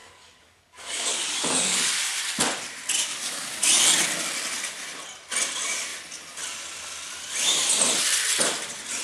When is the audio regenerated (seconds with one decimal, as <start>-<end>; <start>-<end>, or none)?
0.0-2.2; 3.1-3.7